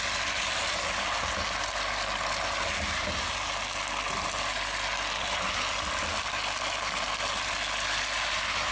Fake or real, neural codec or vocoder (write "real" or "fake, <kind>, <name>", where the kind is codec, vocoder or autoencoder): real